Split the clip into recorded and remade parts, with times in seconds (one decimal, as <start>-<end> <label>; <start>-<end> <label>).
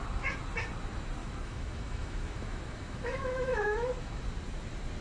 0.0-1.2 recorded; 1.2-4.2 remade; 4.2-5.0 recorded